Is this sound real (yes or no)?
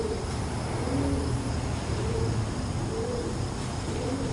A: yes